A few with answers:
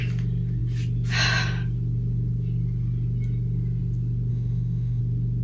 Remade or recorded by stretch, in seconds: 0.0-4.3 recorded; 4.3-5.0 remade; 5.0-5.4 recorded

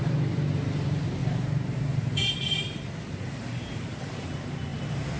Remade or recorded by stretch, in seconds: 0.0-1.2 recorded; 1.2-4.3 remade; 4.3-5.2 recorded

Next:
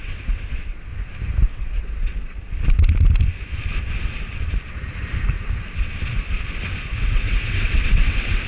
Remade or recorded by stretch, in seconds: 0.0-0.9 remade; 0.9-1.5 recorded; 1.5-2.1 remade; 2.1-7.0 recorded; 7.0-8.5 remade

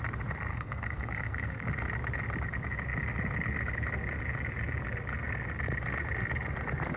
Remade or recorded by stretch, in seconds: 0.0-0.5 recorded; 0.5-1.6 remade; 1.6-7.0 recorded

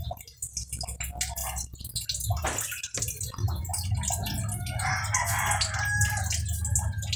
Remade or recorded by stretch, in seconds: 0.0-7.2 recorded